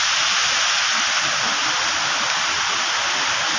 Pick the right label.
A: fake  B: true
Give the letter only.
B